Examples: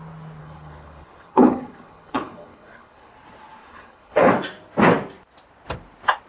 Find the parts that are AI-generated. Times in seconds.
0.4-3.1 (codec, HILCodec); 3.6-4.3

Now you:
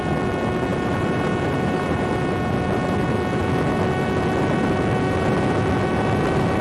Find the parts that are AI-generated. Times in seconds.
0.7-2.1 (vocoder, BigVGAN v2)

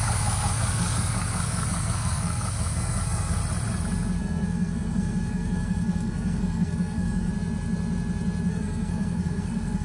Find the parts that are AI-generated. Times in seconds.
0.0-3.4 (codec, SNAC); 4.2-7.3; 8.5-9.8

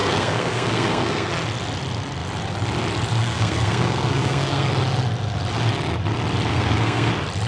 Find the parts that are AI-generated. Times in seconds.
0.0-1.3 (codec, SNAC); 3.2-4.7; 6.5-7.1

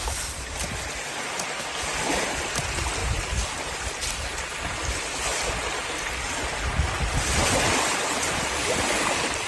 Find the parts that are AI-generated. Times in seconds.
3.0-5.5 (vocoder, BigVGAN v2); 7.4-8.3

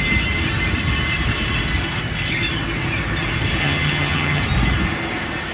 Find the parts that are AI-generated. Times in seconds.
3.6-4.4 (vocoder, HiFi-GAN)

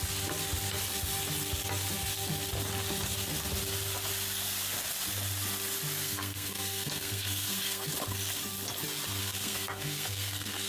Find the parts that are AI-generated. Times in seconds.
6.0-7.9 (codec, SNAC); 9.2-10.7